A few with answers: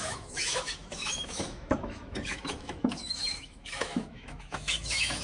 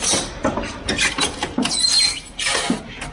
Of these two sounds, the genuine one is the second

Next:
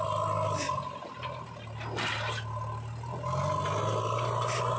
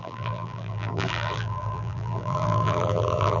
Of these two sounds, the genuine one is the first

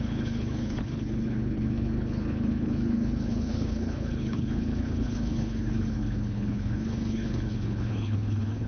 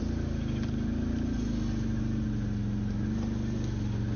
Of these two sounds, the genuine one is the second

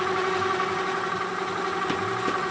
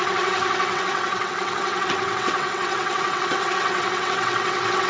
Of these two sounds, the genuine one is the first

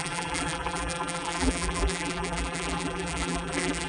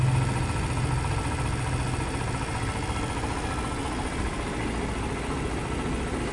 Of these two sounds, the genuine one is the second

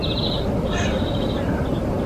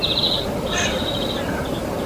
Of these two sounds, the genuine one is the first